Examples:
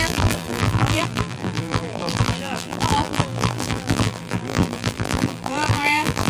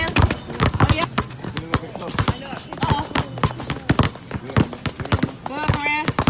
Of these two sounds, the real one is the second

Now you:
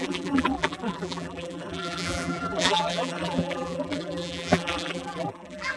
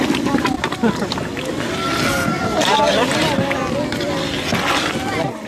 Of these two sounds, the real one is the second